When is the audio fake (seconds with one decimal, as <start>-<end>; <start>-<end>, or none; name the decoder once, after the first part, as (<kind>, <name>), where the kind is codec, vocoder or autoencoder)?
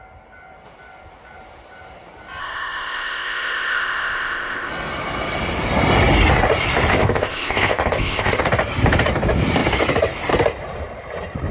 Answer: 2.4-4.7 (codec, ZipCodec); 6.9-8.4